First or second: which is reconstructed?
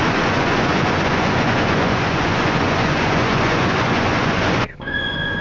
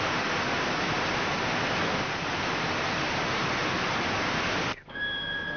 first